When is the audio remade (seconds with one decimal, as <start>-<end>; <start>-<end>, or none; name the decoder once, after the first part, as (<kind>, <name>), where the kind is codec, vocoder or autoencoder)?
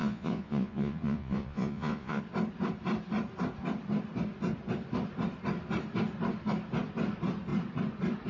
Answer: 0.0-2.2 (vocoder, Vocos)